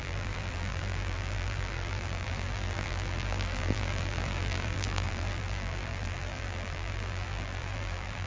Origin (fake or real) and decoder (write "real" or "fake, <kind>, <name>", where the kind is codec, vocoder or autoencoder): fake, vocoder, BigVGAN v2